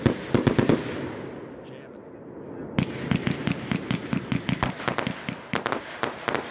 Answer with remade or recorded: recorded